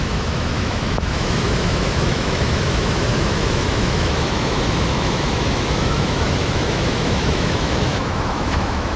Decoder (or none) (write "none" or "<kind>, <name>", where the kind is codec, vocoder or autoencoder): autoencoder, DAC-VAE